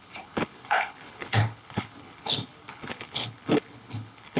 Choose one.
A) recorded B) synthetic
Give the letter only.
B